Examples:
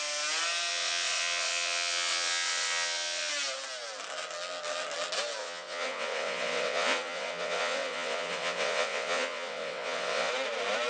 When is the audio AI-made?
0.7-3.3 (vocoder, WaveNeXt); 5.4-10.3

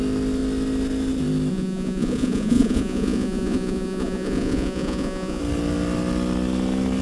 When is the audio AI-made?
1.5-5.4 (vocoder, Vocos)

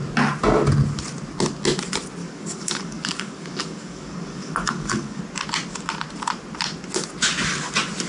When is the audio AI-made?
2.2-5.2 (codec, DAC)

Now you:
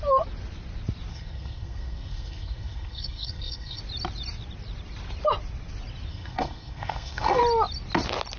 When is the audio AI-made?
1.1-3.8 (codec, SNAC); 6.1-7.4

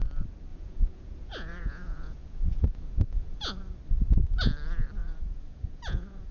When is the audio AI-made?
0.5-3.6 (vocoder, Vocos); 5.0-6.3